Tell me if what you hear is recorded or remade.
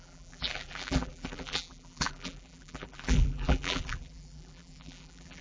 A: remade